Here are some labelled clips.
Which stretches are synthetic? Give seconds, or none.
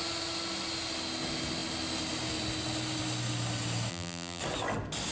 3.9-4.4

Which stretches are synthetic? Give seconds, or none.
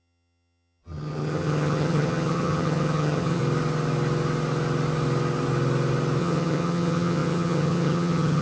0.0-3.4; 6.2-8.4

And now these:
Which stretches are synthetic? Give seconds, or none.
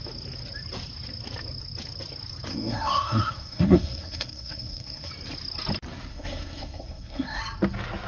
2.5-5.1; 6.1-7.4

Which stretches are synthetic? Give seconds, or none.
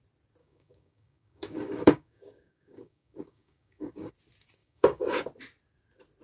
0.4-4.1; 4.6-5.2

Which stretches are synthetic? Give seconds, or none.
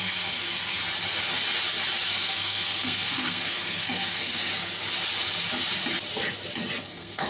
0.0-0.8; 2.1-4.5; 6.8-7.3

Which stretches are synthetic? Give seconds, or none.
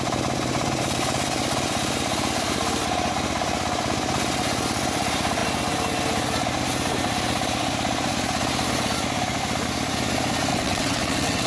10.5-11.5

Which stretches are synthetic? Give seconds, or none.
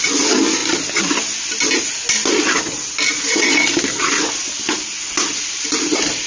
none